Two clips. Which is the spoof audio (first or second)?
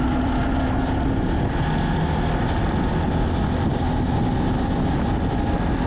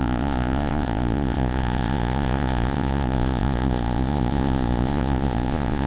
second